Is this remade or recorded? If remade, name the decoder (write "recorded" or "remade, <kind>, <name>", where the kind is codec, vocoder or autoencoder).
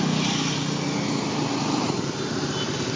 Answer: recorded